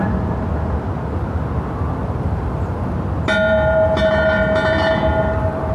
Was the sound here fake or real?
real